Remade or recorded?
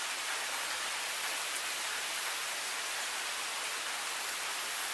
recorded